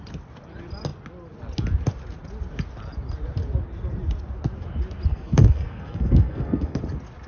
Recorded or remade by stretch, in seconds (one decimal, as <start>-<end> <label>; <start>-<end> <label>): 0.0-5.1 recorded; 5.1-6.8 remade; 6.8-7.3 recorded